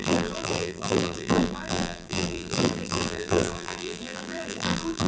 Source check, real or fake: fake